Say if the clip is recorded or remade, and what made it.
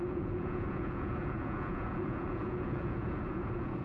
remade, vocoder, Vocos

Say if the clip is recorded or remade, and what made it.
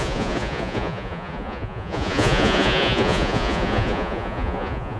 remade, vocoder, Vocos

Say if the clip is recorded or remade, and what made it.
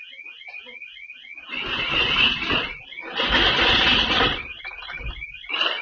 recorded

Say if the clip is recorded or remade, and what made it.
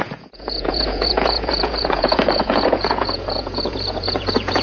remade, vocoder, Vocos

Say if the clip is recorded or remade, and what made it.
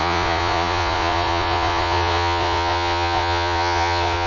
remade, vocoder, Vocos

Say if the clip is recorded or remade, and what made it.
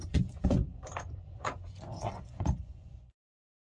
remade, vocoder, Vocos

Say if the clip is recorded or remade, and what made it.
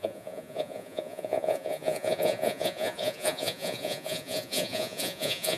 remade, vocoder, Vocos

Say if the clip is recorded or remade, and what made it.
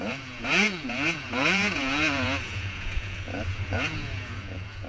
remade, vocoder, Vocos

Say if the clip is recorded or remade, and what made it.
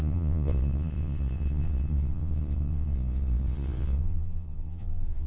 remade, vocoder, Vocos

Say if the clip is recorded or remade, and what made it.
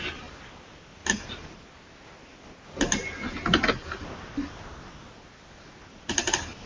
recorded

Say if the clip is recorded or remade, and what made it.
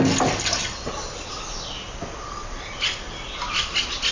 recorded